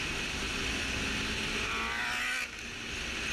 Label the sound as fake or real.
real